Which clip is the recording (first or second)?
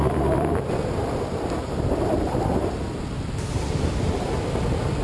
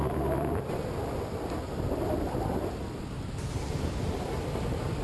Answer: second